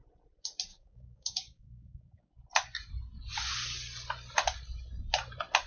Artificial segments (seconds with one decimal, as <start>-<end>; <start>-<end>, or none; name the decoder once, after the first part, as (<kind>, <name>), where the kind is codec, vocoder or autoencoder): 0.7-2.3 (codec, DAC)